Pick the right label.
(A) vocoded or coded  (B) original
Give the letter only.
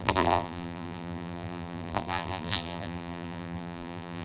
A